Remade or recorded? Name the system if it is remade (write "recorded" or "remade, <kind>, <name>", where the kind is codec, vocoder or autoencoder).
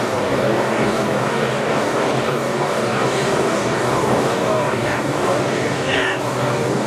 remade, codec, DAC